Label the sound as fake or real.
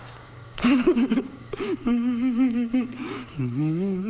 fake